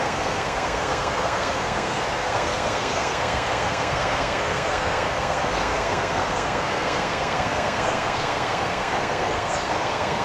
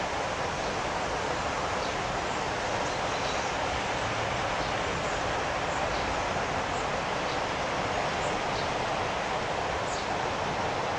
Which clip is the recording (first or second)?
second